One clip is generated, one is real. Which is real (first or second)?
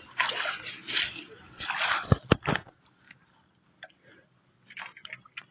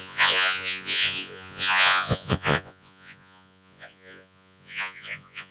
first